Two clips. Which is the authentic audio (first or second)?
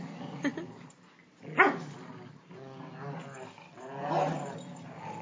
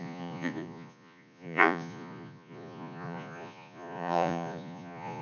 first